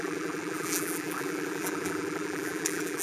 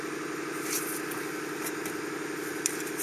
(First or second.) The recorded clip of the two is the second